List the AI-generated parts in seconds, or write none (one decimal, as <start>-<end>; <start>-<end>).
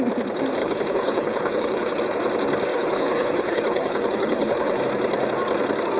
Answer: 0.6-2.0; 2.7-4.8